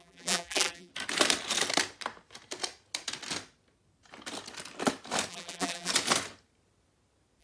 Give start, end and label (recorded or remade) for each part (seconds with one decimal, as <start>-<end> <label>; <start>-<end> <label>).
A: 0.0-0.9 remade; 0.9-5.3 recorded; 5.3-5.9 remade; 5.9-7.4 recorded